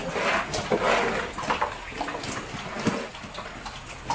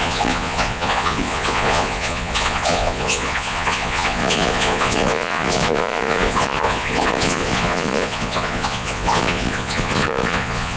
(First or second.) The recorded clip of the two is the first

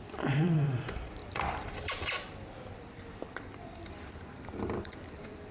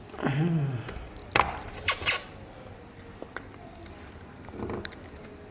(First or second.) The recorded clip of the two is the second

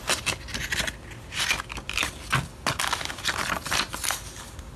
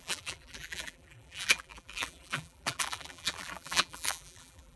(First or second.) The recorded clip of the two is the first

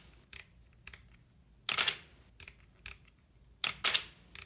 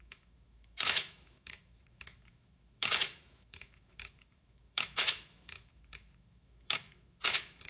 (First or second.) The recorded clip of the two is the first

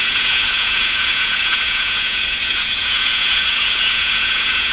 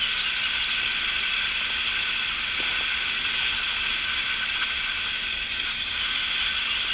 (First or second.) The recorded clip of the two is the second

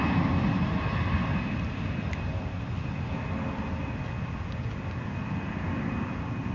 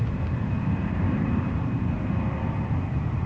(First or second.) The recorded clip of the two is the first